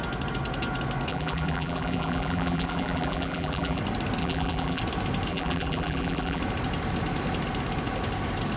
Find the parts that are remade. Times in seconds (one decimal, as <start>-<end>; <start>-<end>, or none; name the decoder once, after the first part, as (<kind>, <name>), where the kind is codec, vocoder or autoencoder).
1.1-3.8 (vocoder, BigVGAN v2); 4.2-4.8; 5.3-6.4